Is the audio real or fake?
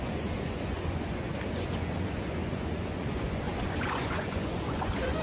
fake